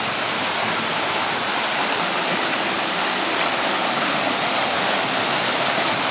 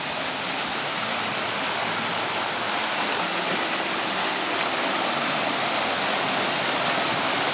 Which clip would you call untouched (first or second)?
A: second